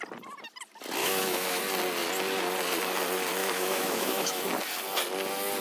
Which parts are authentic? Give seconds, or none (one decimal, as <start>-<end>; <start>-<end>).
0.0-1.0; 1.6-3.4; 4.5-5.6